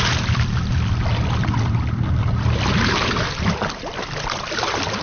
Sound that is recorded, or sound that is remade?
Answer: recorded